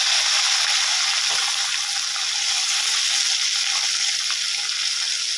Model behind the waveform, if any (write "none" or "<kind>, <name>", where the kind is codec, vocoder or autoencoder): none